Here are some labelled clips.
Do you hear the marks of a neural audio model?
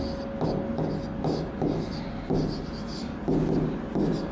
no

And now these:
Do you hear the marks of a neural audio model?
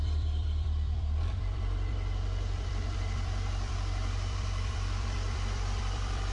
yes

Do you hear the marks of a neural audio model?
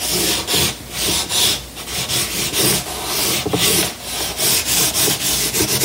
no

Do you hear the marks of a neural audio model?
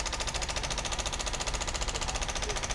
no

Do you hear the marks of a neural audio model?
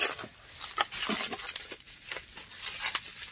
yes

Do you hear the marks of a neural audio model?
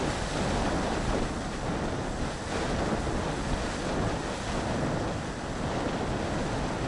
no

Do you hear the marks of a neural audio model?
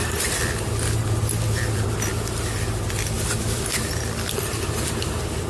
yes